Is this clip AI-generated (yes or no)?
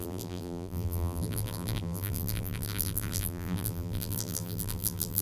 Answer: yes